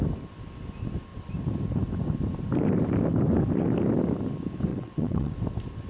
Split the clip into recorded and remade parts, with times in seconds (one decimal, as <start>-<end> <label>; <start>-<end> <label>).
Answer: 0.0-4.7 recorded; 4.7-5.3 remade; 5.3-5.9 recorded